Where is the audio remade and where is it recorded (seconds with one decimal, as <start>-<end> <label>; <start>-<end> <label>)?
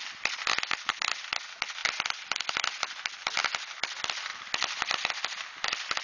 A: 0.0-6.0 recorded